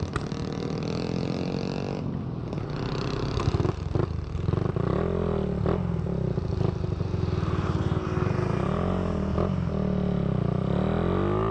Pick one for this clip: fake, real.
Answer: real